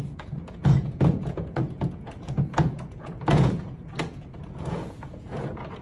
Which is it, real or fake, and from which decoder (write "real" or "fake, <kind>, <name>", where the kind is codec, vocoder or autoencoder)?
fake, vocoder, Vocos